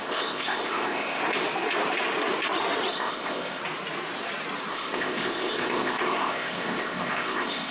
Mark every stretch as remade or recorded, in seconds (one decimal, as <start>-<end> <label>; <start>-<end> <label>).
0.0-1.2 remade; 1.2-2.9 recorded; 2.9-3.6 remade; 3.6-4.7 recorded; 4.7-7.7 remade